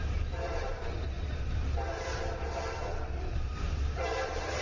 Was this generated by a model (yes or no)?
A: yes